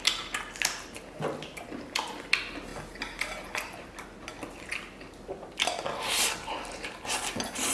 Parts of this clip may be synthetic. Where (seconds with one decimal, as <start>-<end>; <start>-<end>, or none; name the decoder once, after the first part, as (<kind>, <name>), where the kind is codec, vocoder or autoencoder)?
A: none